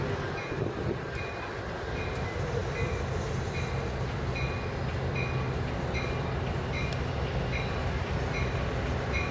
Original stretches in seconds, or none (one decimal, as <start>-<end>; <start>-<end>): 0.0-9.3